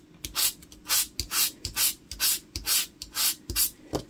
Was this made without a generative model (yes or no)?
yes